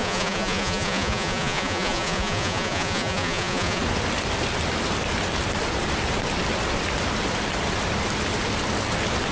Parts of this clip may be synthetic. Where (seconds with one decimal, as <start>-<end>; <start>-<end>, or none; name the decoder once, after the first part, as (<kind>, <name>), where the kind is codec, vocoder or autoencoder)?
0.0-3.8 (vocoder, Vocos)